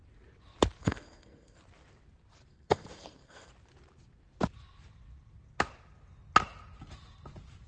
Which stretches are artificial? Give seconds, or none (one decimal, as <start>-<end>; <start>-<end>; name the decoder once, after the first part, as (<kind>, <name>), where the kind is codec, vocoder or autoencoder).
0.8-1.6 (codec, SNAC); 2.5-3.5